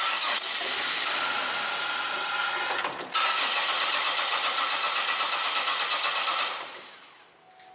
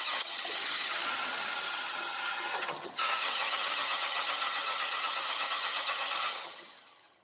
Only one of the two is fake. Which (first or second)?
second